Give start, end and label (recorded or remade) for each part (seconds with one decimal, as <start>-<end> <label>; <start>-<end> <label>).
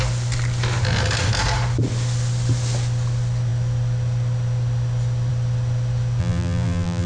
0.0-6.2 recorded; 6.2-7.1 remade